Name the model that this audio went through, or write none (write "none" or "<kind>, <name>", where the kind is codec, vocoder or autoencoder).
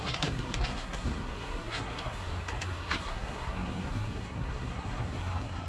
codec, SNAC